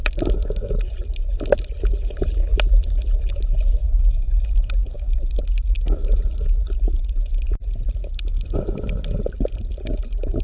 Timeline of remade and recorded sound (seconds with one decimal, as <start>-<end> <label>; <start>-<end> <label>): 0.0-3.8 recorded; 3.8-5.4 remade; 5.4-10.4 recorded